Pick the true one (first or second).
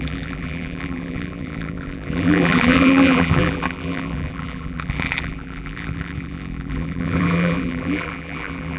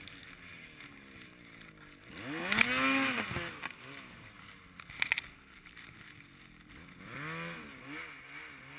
second